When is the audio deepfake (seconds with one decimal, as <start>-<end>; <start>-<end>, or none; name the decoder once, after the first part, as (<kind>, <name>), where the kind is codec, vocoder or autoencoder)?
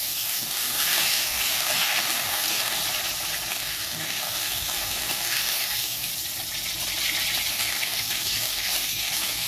0.0-2.8 (codec, DAC); 3.5-6.1; 7.5-9.5